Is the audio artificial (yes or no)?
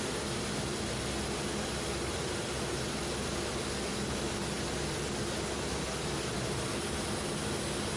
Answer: no